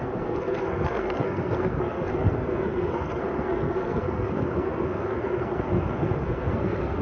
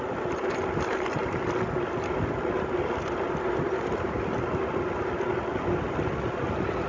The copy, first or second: first